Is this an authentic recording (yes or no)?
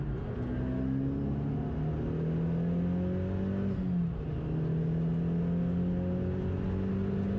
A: yes